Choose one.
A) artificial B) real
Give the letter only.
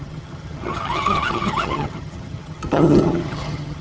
A